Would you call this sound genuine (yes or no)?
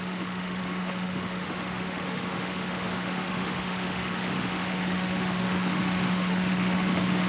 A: no